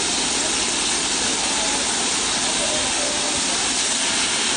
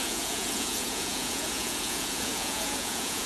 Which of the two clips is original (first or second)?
first